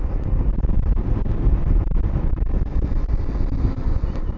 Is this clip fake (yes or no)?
no